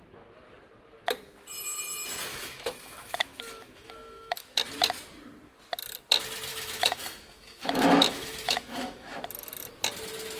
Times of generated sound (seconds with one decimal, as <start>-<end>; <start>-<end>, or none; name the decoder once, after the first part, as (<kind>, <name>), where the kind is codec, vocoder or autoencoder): 2.3-4.4 (autoencoder, DAC-VAE); 6.5-9.2